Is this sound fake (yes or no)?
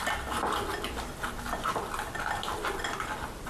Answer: no